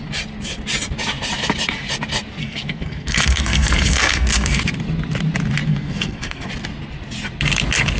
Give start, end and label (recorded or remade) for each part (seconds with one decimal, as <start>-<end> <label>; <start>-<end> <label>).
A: 0.0-2.4 recorded; 2.4-4.6 remade; 4.6-5.7 recorded; 5.7-6.5 remade; 6.5-8.0 recorded